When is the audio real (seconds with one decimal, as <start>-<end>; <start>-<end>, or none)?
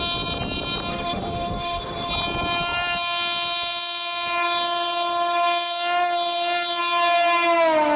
0.0-0.9; 2.1-8.0